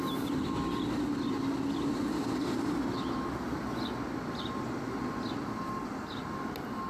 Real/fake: real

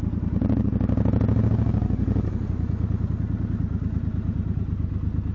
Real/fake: real